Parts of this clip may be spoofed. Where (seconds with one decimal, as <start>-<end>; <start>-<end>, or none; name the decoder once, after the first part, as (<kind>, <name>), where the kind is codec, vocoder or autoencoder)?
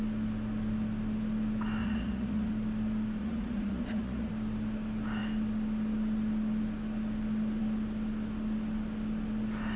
1.8-2.5 (vocoder, Vocos); 3.2-4.3